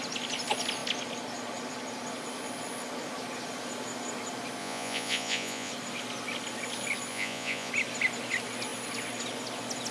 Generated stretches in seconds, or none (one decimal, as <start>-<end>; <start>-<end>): 4.6-5.7; 7.1-7.7